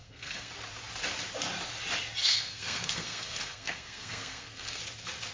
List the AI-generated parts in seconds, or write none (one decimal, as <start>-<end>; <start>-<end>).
0.0-0.5; 2.2-4.8